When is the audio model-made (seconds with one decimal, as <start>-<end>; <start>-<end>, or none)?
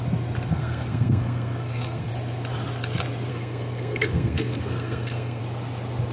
0.5-2.1; 3.3-5.4